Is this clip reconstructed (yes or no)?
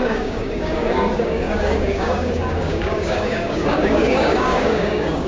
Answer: yes